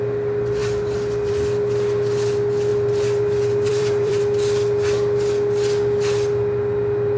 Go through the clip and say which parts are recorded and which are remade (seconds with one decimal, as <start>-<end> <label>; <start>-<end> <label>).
0.0-2.7 recorded; 2.7-4.2 remade; 4.2-7.2 recorded